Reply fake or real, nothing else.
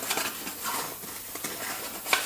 real